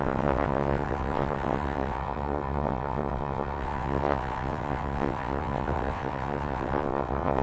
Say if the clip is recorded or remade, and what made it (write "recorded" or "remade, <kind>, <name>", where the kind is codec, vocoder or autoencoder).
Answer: remade, vocoder, WaveNeXt